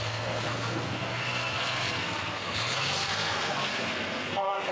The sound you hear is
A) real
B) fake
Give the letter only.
B